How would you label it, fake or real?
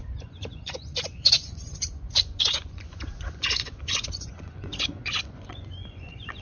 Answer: fake